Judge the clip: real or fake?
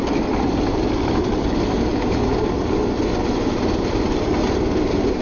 real